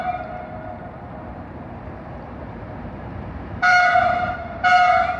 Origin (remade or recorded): remade